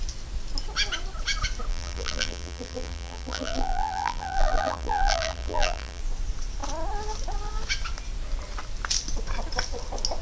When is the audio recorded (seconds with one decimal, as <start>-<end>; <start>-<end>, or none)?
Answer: 0.0-1.7; 6.0-10.2